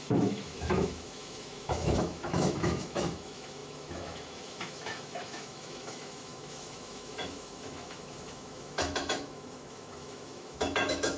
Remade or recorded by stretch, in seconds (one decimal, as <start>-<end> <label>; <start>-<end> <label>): 0.0-11.2 remade